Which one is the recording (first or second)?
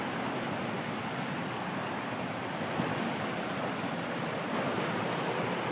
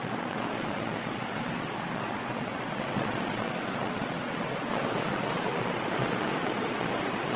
first